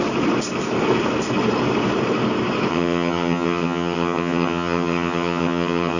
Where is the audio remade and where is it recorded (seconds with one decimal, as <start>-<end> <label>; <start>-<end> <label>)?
0.0-2.7 recorded; 2.7-6.0 remade

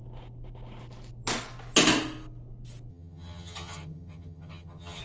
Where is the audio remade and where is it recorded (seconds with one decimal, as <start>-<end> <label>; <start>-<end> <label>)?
0.0-2.9 recorded; 2.9-5.0 remade

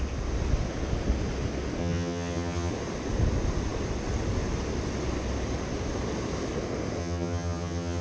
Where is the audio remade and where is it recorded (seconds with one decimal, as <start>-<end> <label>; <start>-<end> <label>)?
0.0-1.8 recorded; 1.8-2.7 remade; 2.7-7.0 recorded; 7.0-8.0 remade

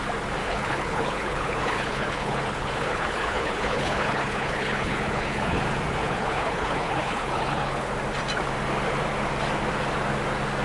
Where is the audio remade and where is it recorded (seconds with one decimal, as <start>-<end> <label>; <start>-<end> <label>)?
0.0-0.4 recorded; 0.4-5.6 remade; 5.6-6.0 recorded; 6.0-7.9 remade; 7.9-10.6 recorded

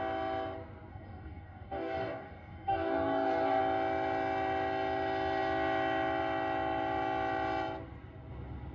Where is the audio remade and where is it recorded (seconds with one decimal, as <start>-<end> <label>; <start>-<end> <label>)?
0.0-0.9 recorded; 0.9-3.6 remade; 3.6-8.7 recorded

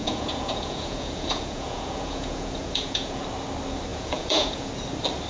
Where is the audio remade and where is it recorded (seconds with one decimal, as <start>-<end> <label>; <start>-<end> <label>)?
0.0-3.2 remade; 3.2-3.9 recorded; 3.9-4.7 remade; 4.7-5.3 recorded